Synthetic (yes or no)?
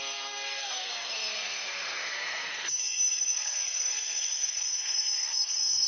yes